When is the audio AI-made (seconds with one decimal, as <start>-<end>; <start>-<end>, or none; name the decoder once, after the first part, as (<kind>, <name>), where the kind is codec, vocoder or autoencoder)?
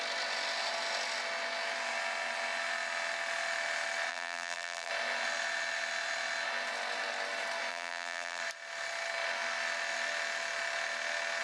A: 4.1-4.9 (vocoder, BigVGAN v2); 7.7-8.4